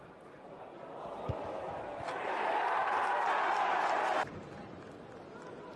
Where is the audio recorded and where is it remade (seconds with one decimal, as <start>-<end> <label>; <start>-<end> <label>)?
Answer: 0.0-5.8 recorded